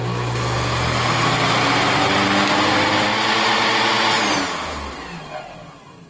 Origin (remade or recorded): recorded